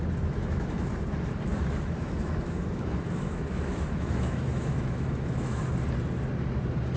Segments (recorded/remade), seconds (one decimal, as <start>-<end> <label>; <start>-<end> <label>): 0.0-0.4 recorded; 0.4-0.9 remade; 0.9-1.5 recorded; 1.5-5.6 remade; 5.6-7.0 recorded